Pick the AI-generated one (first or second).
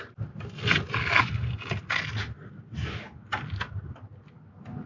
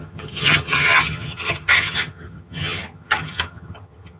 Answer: second